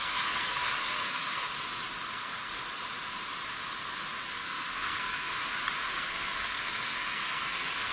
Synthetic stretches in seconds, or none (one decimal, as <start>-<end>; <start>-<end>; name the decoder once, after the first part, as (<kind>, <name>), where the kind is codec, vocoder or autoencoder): 0.0-1.4 (codec, SNAC); 2.1-2.6; 4.3-5.4; 5.9-7.9